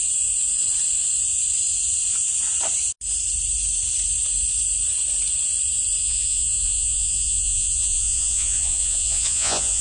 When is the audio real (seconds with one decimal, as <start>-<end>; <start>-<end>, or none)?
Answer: 0.0-6.0